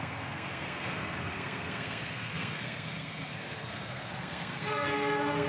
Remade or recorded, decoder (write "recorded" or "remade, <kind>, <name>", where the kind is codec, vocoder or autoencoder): remade, codec, SNAC